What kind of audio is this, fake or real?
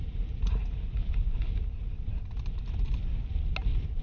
real